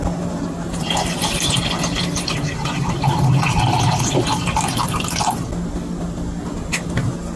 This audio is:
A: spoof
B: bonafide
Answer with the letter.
B